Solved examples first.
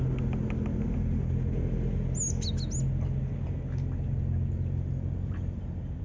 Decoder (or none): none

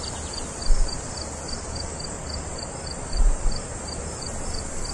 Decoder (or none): none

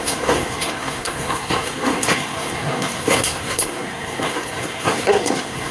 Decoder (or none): codec, SNAC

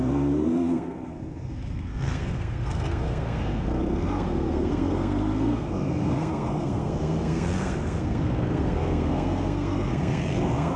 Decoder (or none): codec, SNAC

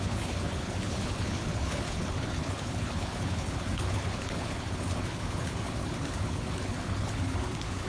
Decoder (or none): codec, HILCodec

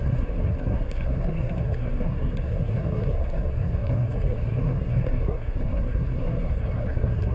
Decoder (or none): codec, SNAC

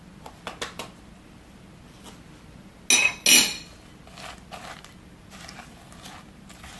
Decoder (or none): none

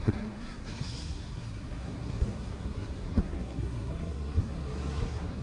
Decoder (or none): codec, SNAC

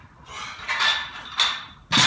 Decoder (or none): none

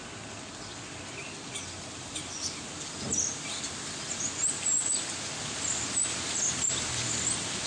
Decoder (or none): none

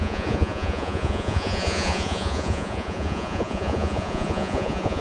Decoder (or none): vocoder, Vocos